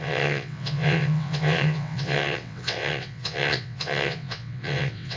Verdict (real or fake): fake